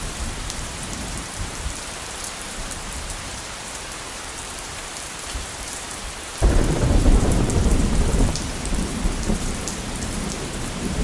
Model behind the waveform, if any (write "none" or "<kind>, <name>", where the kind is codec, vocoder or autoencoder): vocoder, BigVGAN v2